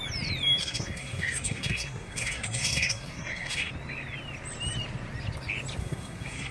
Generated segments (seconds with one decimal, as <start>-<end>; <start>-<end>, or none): 0.6-3.7; 5.8-6.5